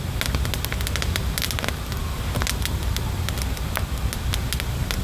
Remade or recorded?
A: recorded